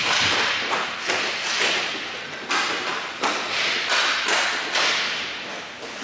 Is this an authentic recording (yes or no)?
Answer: yes